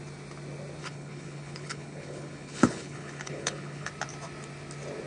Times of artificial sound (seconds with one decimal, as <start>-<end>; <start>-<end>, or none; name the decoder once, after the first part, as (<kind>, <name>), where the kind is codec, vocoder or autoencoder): 0.8-3.9 (codec, HILCodec)